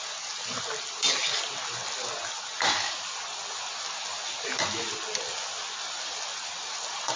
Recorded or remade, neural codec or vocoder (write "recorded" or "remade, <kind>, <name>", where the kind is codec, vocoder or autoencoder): recorded